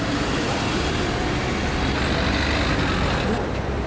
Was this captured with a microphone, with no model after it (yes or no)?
yes